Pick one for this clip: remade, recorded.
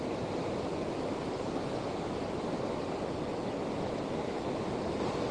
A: recorded